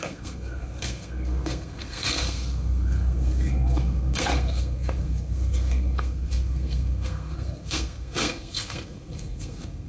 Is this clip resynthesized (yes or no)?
yes